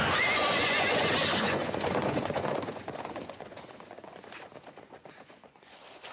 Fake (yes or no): yes